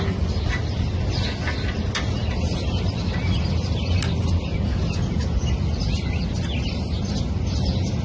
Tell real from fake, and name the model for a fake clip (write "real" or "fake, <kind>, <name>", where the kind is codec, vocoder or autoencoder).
real